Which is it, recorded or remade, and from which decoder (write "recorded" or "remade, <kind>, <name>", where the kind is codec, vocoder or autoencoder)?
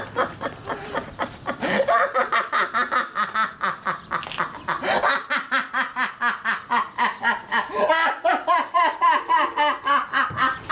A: recorded